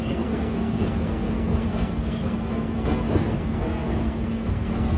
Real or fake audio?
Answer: fake